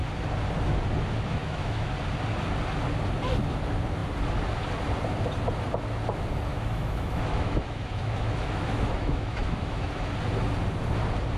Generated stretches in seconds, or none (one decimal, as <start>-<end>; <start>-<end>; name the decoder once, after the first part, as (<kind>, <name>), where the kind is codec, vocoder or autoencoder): 1.4-1.9 (autoencoder, DAC-VAE); 6.5-10.1